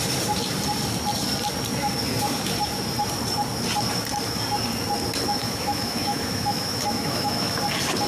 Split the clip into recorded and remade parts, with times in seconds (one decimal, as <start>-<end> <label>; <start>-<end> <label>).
0.0-5.4 recorded; 5.4-7.6 remade; 7.6-8.1 recorded